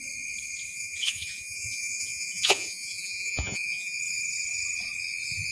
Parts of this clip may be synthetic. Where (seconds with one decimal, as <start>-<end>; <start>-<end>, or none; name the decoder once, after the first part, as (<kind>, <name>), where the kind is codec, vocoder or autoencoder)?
0.7-4.0 (vocoder, Vocos)